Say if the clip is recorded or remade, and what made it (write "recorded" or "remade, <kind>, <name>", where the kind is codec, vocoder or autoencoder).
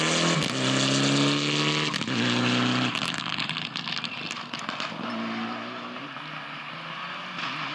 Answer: recorded